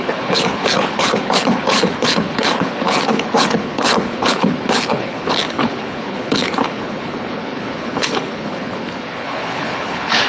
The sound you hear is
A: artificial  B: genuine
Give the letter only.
A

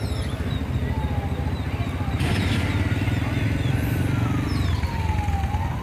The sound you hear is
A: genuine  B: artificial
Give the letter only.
A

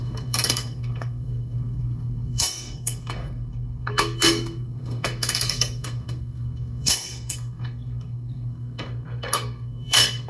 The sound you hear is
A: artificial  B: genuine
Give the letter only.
A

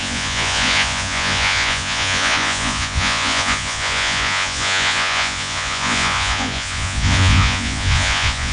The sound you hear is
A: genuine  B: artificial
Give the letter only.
B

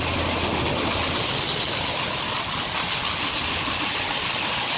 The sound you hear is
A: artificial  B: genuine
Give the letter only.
B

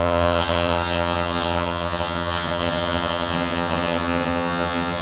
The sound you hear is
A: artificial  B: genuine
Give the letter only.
A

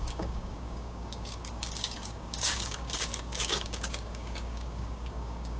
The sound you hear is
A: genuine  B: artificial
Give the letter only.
B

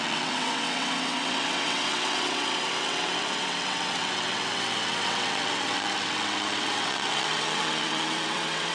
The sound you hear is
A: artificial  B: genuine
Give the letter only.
A